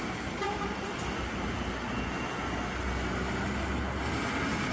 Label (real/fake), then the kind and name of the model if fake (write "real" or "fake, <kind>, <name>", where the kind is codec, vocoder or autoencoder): real